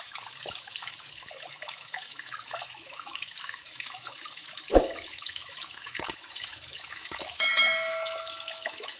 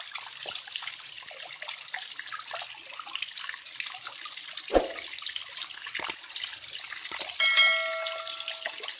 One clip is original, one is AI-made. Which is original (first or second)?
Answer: second